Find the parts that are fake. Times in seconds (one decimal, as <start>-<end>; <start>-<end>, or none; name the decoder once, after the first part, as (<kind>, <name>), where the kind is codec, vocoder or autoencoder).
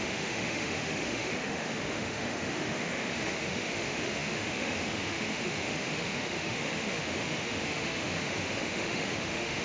0.0-9.6 (autoencoder, DAC-VAE)